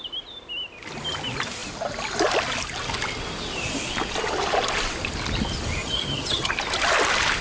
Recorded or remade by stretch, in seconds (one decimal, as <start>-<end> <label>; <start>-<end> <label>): 0.0-5.8 recorded; 5.8-6.5 remade; 6.5-7.4 recorded